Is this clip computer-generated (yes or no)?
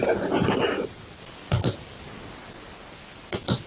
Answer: no